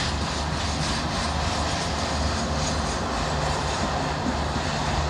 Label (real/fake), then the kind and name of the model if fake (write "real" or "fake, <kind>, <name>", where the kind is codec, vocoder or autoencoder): real